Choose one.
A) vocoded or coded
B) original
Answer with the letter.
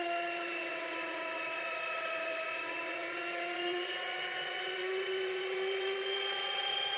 A